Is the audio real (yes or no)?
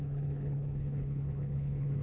no